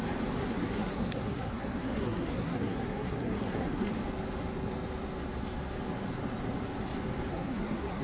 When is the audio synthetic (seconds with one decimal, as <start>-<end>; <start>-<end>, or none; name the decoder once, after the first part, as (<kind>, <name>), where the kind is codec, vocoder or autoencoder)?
0.4-3.9 (codec, SNAC); 7.3-8.0